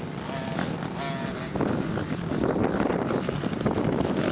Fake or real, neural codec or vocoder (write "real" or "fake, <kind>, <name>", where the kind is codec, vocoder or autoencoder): real